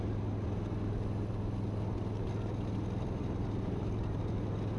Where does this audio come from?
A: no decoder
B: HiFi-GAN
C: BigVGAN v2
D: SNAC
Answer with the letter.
A